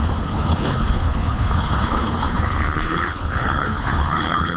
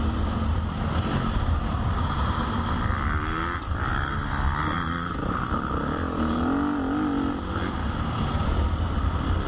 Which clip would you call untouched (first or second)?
second